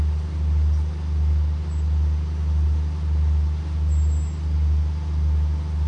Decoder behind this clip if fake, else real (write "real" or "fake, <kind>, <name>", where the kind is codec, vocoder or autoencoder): real